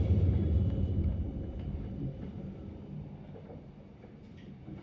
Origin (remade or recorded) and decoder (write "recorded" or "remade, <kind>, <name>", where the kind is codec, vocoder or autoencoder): remade, vocoder, BigVGAN v2